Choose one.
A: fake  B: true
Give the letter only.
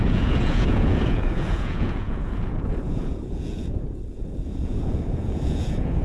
A